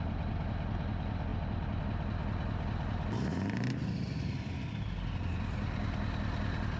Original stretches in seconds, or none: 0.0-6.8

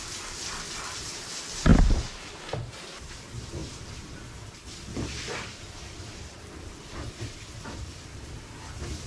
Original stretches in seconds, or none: 1.7-2.3

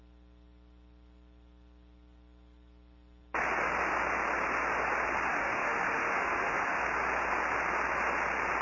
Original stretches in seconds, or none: 0.0-5.3; 6.8-8.6

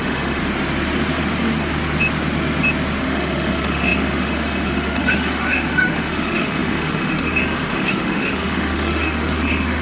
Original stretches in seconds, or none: 0.4-3.0

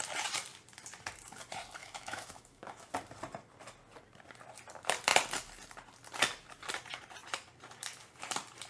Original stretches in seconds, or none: 0.0-1.8; 2.9-8.7